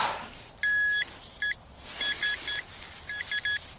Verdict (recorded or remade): recorded